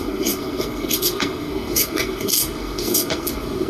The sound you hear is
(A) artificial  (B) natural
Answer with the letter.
A